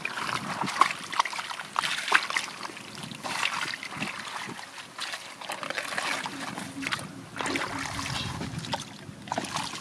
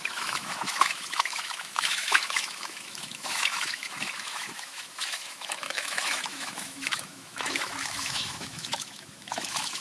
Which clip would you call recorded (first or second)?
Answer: first